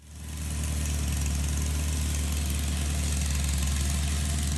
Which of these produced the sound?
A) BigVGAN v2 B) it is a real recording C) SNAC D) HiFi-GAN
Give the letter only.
B